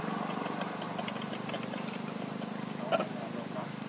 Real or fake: real